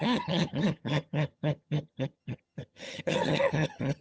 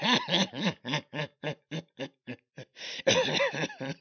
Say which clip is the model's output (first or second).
first